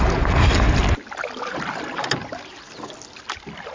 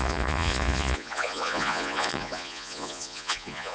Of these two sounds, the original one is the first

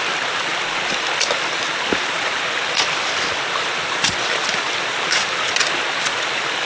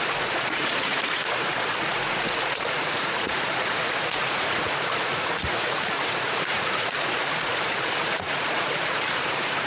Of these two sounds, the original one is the first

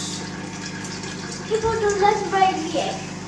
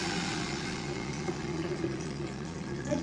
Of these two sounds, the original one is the first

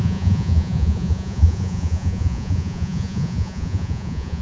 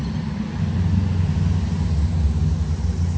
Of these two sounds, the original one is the second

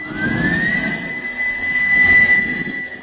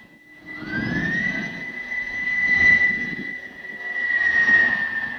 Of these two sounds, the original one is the first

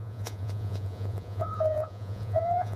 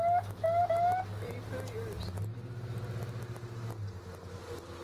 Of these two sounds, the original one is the second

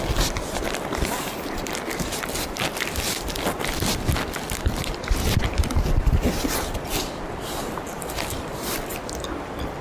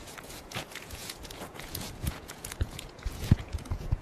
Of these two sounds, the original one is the first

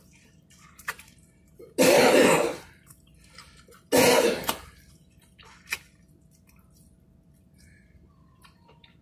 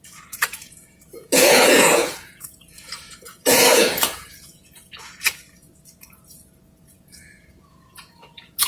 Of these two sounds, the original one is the first